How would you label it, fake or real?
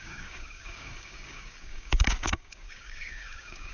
fake